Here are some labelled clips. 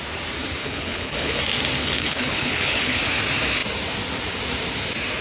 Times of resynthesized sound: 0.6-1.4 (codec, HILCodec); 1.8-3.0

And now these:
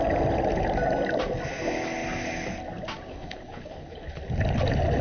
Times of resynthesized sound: 3.1-4.2 (codec, HILCodec)